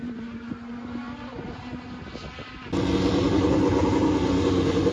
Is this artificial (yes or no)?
no